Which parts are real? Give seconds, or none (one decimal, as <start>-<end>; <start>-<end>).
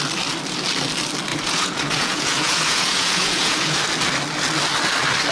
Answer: 0.0-1.3; 3.8-5.3